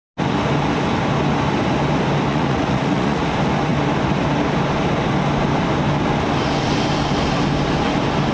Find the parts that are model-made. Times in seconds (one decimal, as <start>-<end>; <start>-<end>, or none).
2.3-3.2

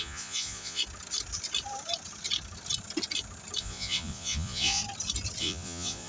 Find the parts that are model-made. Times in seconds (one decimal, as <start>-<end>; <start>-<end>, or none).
0.0-0.8; 3.6-4.8; 5.4-6.1

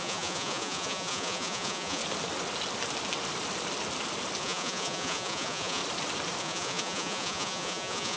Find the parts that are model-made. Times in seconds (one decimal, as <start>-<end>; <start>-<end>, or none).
0.0-2.0; 4.4-5.8; 6.4-8.2

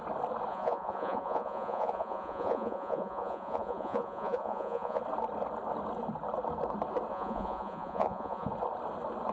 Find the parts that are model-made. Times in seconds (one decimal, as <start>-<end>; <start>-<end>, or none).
0.5-5.0; 7.1-8.5

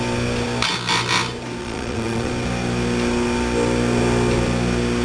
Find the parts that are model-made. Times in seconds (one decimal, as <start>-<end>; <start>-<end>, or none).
1.6-2.3

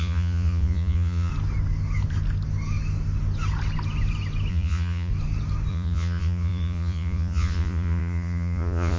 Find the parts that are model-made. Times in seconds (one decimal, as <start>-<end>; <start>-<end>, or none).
0.0-1.3; 4.5-5.1; 5.7-9.0

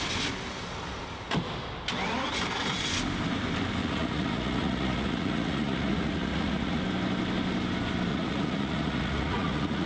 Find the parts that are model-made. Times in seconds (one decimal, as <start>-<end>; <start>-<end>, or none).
3.8-6.8; 8.1-9.9